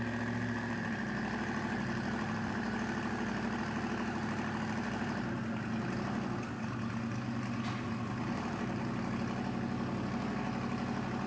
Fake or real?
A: real